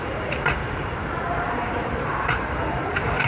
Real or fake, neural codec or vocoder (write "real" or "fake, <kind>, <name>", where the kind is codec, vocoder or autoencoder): fake, vocoder, BigVGAN v2